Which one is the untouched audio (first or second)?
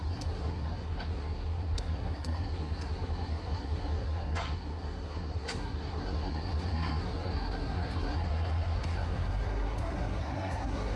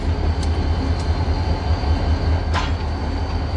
second